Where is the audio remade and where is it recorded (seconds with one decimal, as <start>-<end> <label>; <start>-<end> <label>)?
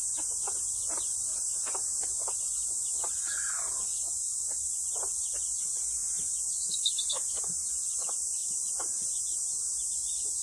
0.0-8.4 recorded; 8.4-9.2 remade; 9.2-10.4 recorded